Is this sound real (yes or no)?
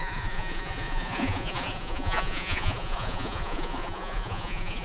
no